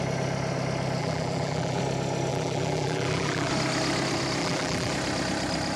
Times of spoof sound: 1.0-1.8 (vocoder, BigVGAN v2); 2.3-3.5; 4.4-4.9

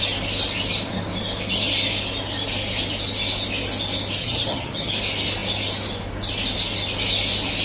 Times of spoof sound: 4.2-4.9 (vocoder, HiFi-GAN)

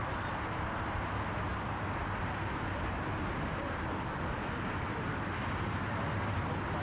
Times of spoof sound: none